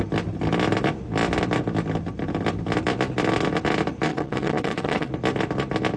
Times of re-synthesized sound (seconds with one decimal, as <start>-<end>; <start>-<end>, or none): 4.1-5.1